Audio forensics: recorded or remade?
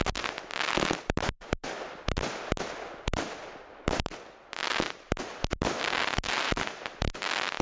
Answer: recorded